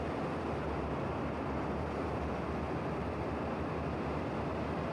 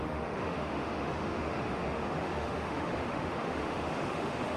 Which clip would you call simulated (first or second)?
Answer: second